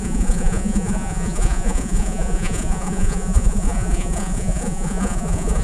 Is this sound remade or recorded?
remade